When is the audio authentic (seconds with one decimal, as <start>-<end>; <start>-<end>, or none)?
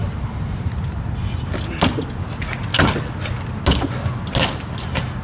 0.0-5.2